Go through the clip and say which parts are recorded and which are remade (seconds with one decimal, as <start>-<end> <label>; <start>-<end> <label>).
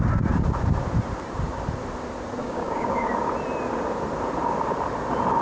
0.0-2.4 recorded; 2.4-3.1 remade; 3.1-5.4 recorded